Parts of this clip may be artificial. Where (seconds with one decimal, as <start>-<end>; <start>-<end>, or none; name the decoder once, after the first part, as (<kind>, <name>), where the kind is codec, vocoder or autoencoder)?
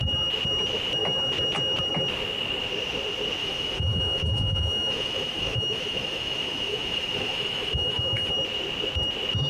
3.4-8.3 (autoencoder, DAC-VAE)